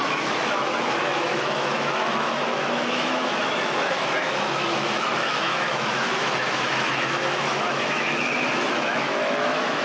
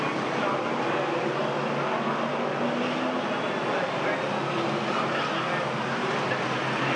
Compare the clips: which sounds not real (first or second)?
first